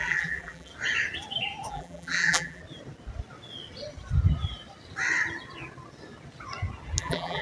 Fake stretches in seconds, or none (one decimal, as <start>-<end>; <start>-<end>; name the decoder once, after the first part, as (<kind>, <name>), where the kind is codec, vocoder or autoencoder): 0.0-0.7 (vocoder, BigVGAN v2); 1.7-2.6; 7.0-7.4